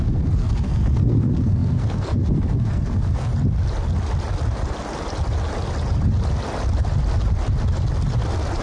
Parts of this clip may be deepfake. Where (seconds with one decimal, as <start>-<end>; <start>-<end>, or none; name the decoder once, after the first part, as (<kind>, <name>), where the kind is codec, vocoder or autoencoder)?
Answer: 0.0-3.3 (codec, SNAC)